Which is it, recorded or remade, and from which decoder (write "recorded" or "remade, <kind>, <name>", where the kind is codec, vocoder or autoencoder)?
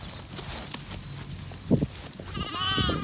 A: recorded